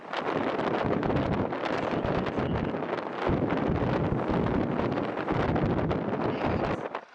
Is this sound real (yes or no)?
yes